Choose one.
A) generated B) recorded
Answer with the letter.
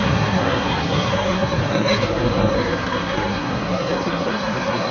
A